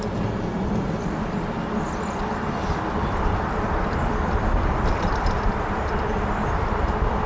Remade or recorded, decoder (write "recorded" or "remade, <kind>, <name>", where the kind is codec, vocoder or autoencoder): remade, vocoder, BigVGAN v2